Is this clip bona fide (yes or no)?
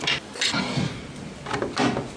yes